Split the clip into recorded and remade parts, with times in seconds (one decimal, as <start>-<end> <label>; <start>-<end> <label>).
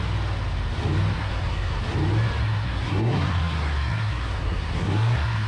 0.0-1.2 recorded; 1.2-1.8 remade; 1.8-2.4 recorded; 2.4-5.5 remade